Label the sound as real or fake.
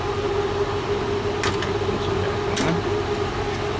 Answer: real